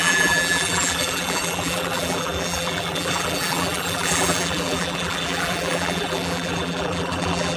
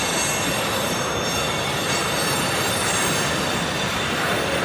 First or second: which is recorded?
second